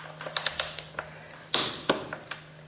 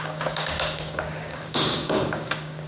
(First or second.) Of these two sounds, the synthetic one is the second